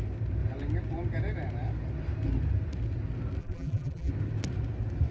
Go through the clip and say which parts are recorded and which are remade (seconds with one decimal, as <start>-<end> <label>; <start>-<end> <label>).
0.0-3.4 recorded; 3.4-4.1 remade; 4.1-5.1 recorded